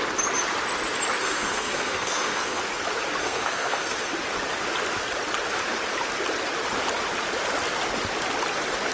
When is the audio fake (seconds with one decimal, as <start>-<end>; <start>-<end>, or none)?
1.2-2.6; 3.2-4.1